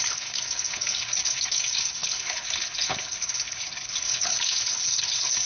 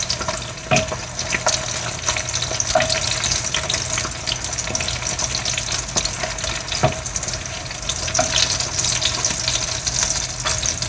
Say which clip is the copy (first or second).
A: first